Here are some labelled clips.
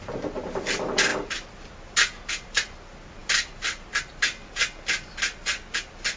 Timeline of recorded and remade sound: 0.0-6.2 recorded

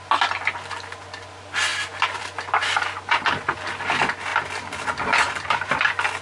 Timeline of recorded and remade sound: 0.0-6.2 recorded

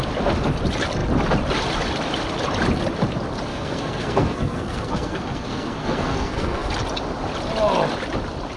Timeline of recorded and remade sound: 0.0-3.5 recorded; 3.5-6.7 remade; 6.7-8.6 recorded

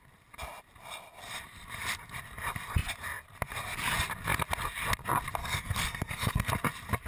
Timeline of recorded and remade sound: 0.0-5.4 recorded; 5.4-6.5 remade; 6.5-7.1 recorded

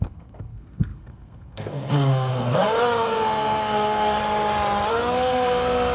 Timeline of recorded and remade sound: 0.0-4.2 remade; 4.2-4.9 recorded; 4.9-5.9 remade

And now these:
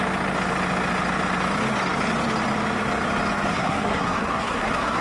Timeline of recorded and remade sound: 0.0-3.5 recorded; 3.5-5.0 remade